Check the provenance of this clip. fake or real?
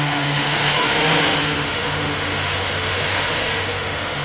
fake